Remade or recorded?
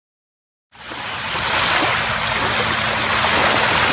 recorded